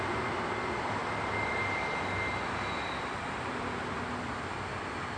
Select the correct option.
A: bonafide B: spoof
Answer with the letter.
A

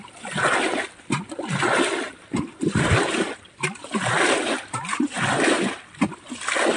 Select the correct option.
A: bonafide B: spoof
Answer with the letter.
A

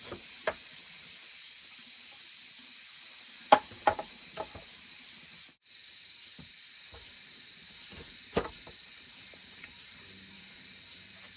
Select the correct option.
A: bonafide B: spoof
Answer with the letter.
B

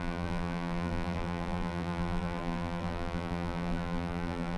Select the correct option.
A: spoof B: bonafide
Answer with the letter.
A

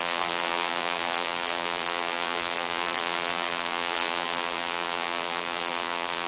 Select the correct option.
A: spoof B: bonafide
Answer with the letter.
A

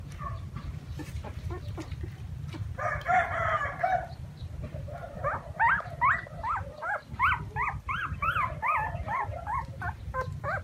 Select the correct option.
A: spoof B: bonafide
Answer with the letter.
A